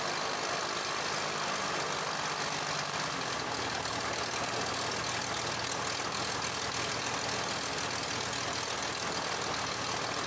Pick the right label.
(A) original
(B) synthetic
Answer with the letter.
A